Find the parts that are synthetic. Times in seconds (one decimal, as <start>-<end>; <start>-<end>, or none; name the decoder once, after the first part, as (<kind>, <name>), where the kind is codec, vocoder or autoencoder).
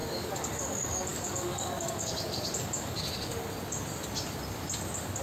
0.0-3.4 (codec, DAC)